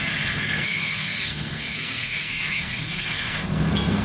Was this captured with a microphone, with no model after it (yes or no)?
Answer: no